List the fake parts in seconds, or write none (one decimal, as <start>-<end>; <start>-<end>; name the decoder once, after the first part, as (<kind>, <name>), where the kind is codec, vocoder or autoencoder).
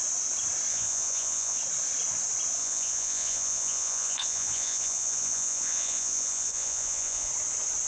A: 0.7-1.6 (vocoder, Vocos); 2.6-7.3